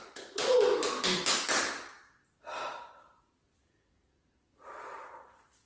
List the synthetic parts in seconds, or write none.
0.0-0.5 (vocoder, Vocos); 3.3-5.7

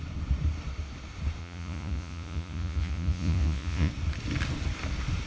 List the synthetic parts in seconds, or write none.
1.4-3.9 (vocoder, Vocos)

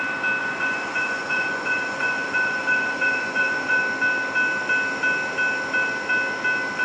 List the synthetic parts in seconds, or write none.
0.4-3.8 (vocoder, Vocos)

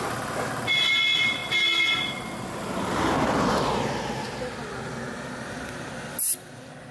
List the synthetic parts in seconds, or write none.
none

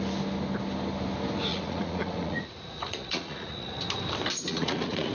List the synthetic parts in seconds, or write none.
1.5-3.8 (vocoder, Vocos); 4.5-5.1

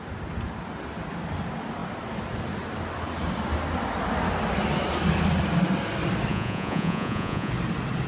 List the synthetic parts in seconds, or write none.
6.3-7.5 (vocoder, Vocos)

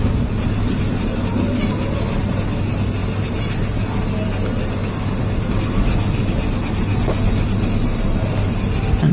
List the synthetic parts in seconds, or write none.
none